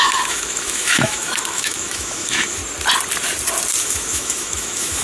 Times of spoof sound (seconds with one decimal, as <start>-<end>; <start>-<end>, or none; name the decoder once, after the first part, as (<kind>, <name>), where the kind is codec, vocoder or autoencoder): 0.0-2.6 (autoencoder, DAC-VAE); 3.8-5.0